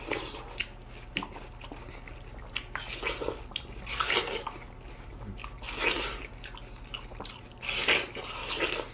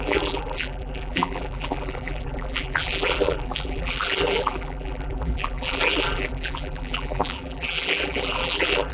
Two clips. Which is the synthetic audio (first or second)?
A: second